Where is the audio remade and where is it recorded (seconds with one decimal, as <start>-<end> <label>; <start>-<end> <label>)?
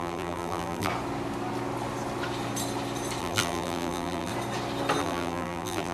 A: 0.0-0.9 remade; 0.9-3.2 recorded; 3.2-4.3 remade; 4.3-5.0 recorded; 5.0-5.9 remade